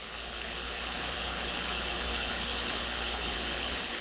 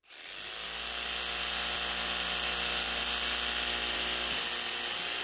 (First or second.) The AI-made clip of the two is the first